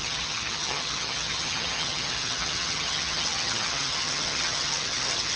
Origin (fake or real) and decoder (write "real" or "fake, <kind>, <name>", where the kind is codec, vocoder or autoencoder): fake, vocoder, HiFi-GAN